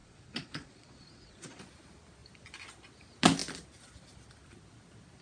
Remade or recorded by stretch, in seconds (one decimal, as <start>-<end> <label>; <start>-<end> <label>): 0.0-1.6 remade; 1.6-5.2 recorded